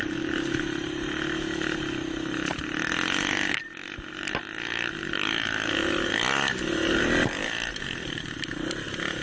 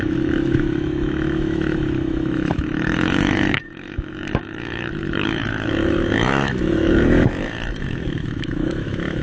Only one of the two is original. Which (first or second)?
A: first